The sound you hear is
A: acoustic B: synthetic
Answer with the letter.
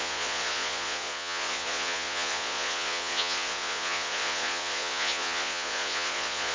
B